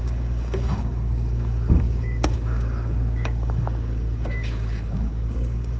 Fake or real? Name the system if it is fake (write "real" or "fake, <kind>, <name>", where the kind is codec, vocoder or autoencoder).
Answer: fake, codec, DAC